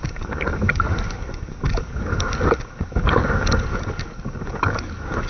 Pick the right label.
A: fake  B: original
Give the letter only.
A